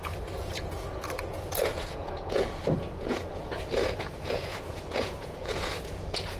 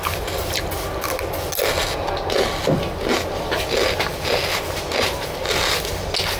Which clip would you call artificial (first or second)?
first